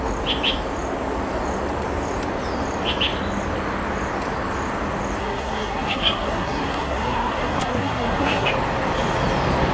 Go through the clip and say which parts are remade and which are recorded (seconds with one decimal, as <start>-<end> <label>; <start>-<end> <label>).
0.0-5.2 recorded; 5.2-8.5 remade; 8.5-9.7 recorded

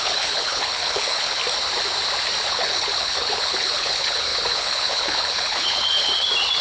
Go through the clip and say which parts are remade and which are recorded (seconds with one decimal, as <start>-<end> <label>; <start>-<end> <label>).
0.0-1.4 remade; 1.4-2.5 recorded; 2.5-6.1 remade; 6.1-6.6 recorded

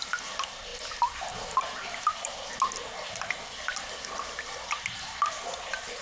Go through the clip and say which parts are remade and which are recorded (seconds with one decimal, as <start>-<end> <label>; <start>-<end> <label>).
0.0-6.0 recorded

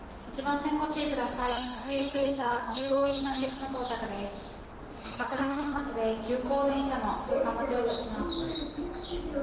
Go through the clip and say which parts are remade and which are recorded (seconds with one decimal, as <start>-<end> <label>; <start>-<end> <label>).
0.0-1.4 recorded; 1.4-3.6 remade; 3.6-5.0 recorded; 5.0-5.8 remade; 5.8-9.4 recorded

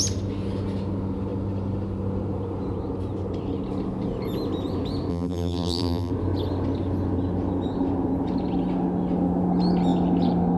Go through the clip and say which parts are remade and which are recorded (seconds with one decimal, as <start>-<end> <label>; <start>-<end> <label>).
0.0-5.1 recorded; 5.1-6.1 remade; 6.1-10.6 recorded

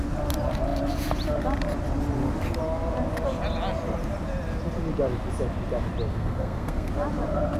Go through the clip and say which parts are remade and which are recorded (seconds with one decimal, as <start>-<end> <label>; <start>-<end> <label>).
0.0-6.1 recorded; 6.1-6.9 remade; 6.9-7.6 recorded

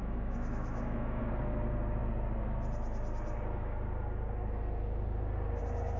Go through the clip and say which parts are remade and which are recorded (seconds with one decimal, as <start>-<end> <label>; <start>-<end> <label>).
0.0-1.2 remade; 1.2-6.0 recorded

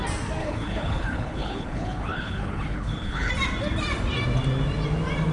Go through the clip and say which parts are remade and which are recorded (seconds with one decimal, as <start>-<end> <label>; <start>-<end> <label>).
0.0-0.4 recorded; 0.4-3.3 remade; 3.3-5.3 recorded